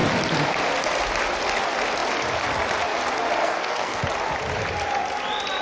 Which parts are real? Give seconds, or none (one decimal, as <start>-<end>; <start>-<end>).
0.0-3.4; 4.0-5.6